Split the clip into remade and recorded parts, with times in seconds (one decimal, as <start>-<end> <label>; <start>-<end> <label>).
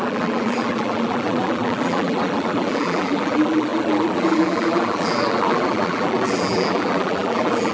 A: 0.0-7.7 remade